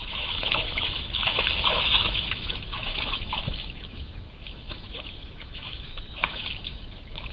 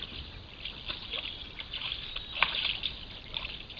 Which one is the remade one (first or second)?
first